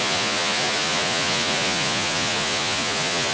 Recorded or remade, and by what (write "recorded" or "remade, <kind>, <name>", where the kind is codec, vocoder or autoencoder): remade, vocoder, Vocos